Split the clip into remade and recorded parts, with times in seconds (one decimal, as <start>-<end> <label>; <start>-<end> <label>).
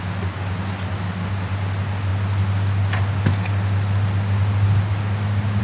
0.0-5.6 recorded